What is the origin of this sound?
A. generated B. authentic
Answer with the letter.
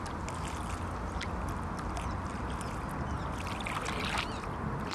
B